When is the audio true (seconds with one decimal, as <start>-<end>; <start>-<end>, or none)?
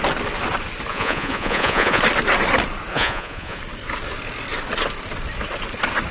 0.0-0.9; 2.0-2.9; 3.6-6.1